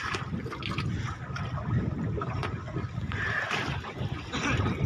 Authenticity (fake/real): real